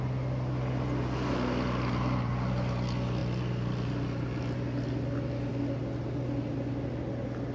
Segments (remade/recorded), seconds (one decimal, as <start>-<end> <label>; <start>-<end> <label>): 0.0-7.5 recorded